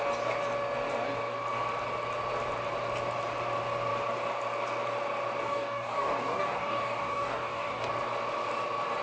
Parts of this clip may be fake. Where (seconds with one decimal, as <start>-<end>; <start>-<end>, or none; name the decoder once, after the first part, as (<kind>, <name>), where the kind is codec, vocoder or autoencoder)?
5.4-7.9 (codec, DAC)